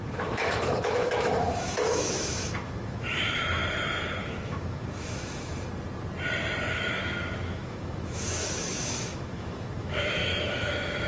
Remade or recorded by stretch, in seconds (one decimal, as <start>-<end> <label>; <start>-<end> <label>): 0.0-3.6 remade; 3.6-4.2 recorded; 4.2-5.5 remade; 5.5-6.7 recorded; 6.7-11.1 remade